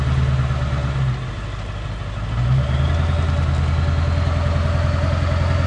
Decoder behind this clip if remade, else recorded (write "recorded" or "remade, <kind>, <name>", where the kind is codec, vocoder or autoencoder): recorded